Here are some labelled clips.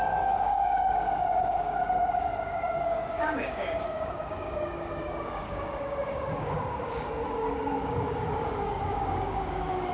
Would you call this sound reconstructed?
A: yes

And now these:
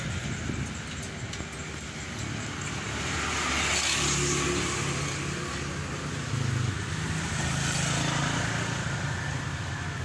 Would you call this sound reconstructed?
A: no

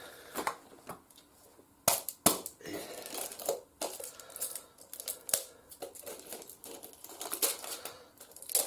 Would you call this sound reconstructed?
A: no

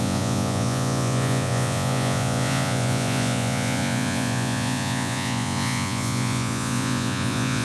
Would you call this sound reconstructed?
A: yes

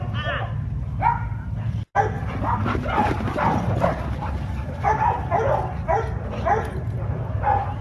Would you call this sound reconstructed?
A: no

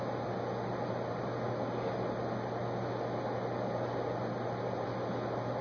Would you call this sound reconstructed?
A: no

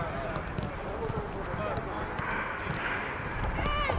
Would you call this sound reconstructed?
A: no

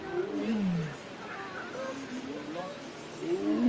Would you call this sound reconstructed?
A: no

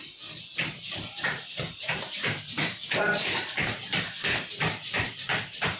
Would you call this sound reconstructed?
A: yes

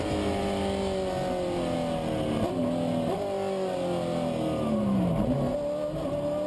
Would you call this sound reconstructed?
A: no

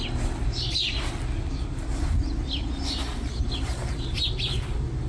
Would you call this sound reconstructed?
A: no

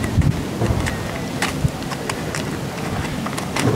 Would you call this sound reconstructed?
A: no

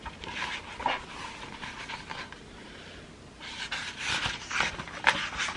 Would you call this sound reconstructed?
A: no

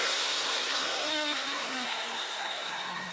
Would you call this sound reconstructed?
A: yes